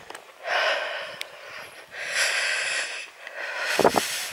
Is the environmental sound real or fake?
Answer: real